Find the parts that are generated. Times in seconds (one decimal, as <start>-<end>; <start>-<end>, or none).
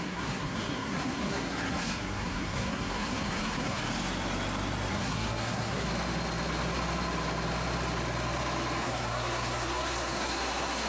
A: 0.0-3.8; 4.9-5.9; 8.8-10.9